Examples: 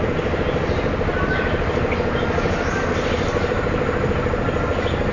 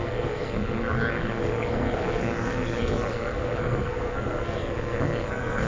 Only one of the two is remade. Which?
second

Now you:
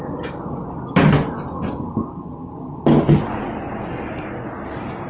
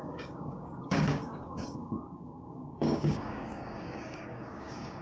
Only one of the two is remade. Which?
second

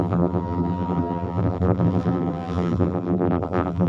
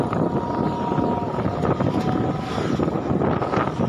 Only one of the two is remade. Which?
first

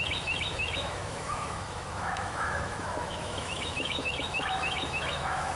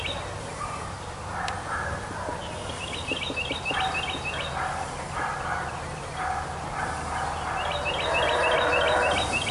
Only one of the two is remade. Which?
first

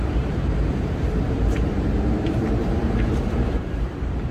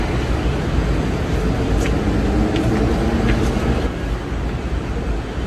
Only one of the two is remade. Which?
first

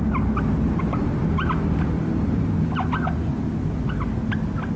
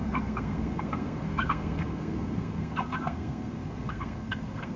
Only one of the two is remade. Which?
second